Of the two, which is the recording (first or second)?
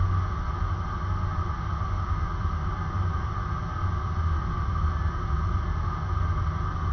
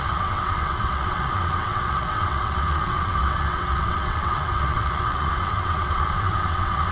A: first